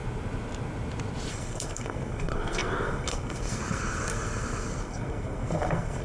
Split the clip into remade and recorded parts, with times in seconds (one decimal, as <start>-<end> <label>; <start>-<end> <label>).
0.0-1.3 recorded; 1.3-6.0 remade